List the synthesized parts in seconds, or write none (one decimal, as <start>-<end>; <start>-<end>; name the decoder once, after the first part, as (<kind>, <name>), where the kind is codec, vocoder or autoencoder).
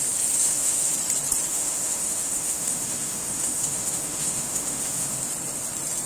0.4-0.9 (autoencoder, DAC-VAE); 1.5-5.2